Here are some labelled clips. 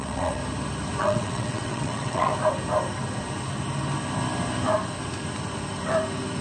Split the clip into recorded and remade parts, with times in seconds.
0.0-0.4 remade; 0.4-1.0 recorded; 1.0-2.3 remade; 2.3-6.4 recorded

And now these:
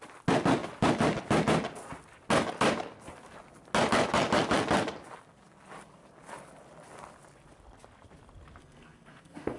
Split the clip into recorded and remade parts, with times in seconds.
0.0-8.6 recorded; 8.6-9.6 remade

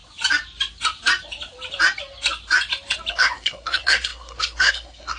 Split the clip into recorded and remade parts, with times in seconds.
0.0-3.1 recorded; 3.1-5.2 remade

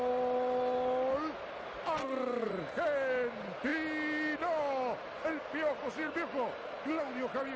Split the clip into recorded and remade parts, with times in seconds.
0.0-2.0 recorded; 2.0-2.5 remade; 2.5-7.6 recorded

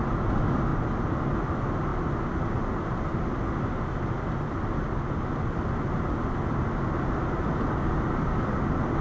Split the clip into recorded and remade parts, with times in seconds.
0.0-9.0 recorded